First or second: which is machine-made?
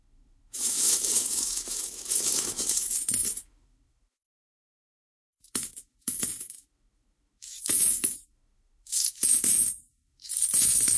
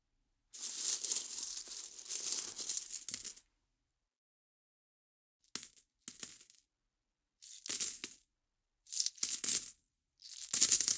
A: first